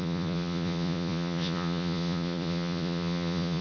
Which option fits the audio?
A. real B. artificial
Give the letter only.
B